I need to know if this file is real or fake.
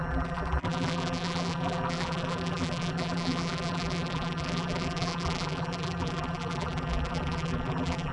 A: fake